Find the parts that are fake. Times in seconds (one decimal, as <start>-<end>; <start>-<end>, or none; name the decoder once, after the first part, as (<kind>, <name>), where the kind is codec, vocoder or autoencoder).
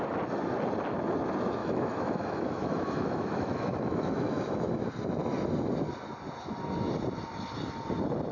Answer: 1.6-4.8 (autoencoder, DAC-VAE)